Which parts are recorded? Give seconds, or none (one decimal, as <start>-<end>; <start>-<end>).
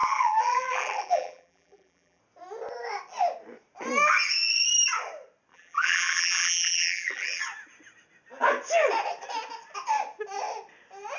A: 2.2-5.5; 7.4-11.2